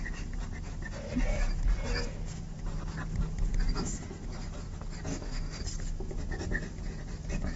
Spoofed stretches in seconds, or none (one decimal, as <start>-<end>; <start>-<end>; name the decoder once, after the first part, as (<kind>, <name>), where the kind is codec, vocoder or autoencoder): 5.1-5.6 (codec, DAC)